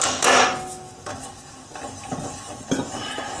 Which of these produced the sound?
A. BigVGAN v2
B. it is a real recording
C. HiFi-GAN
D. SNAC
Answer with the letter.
B